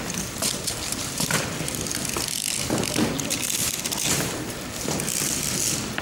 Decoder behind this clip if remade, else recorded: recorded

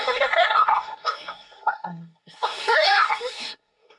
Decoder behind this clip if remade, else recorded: remade, codec, SNAC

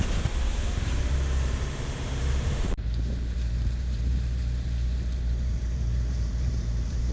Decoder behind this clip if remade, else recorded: remade, vocoder, BigVGAN v2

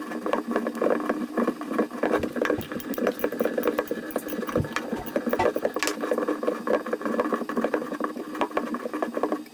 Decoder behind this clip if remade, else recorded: recorded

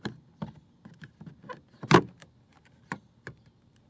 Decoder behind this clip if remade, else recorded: recorded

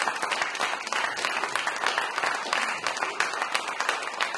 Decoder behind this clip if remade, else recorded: recorded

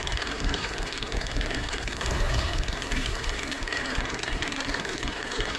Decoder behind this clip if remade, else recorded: remade, codec, SNAC